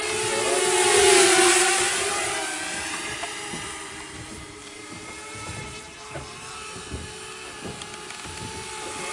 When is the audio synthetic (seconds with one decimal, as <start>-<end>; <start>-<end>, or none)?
1.9-6.2